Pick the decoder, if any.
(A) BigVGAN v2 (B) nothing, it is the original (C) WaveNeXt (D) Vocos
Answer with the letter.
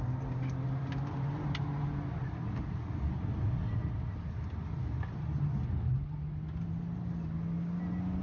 B